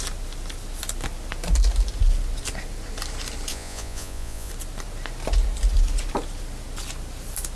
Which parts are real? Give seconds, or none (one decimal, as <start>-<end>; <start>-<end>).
0.0-3.5; 4.5-7.5